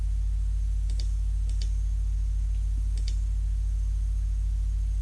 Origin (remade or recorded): recorded